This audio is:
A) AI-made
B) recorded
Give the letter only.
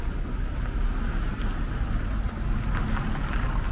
B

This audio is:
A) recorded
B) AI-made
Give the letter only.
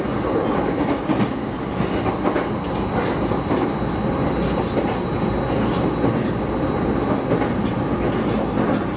A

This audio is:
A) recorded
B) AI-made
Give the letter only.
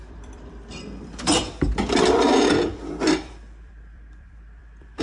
B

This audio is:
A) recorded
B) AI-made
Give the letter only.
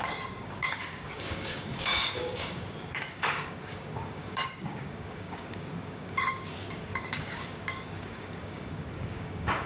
B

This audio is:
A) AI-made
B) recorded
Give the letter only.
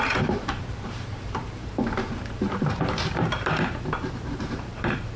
A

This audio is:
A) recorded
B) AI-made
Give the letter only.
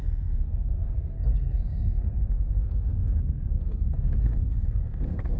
B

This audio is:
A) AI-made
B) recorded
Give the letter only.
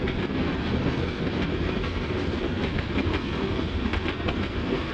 A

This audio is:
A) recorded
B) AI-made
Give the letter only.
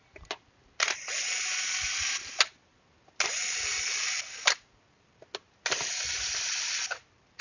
A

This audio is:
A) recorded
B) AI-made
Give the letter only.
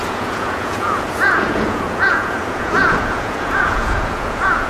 B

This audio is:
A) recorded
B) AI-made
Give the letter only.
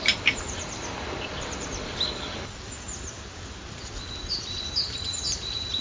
A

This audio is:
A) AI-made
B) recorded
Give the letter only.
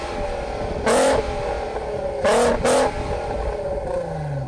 B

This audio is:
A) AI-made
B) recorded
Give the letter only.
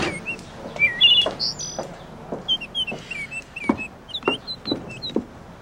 B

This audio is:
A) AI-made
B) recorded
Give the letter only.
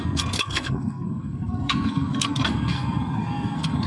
A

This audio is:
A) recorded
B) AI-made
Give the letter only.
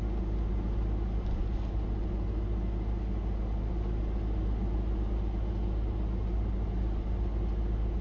A